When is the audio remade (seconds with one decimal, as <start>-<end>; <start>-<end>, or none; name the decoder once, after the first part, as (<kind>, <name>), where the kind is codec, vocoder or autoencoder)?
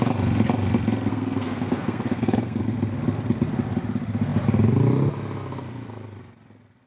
1.1-2.6 (codec, SNAC)